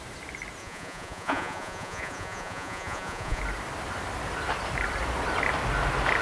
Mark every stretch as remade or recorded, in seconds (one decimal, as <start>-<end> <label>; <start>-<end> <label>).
0.0-0.6 recorded; 0.6-3.4 remade; 3.4-6.2 recorded

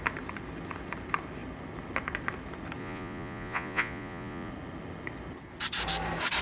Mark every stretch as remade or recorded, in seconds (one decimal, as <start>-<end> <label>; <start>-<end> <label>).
0.0-2.8 recorded; 2.8-4.5 remade; 4.5-6.4 recorded